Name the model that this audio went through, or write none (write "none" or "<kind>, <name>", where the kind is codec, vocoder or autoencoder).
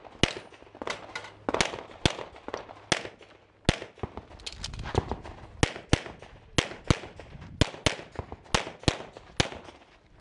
none